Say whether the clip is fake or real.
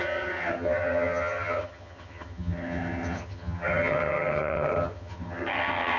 fake